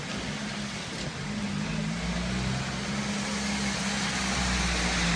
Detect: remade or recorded recorded